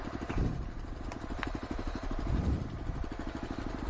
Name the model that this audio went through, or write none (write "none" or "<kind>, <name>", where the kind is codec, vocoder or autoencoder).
none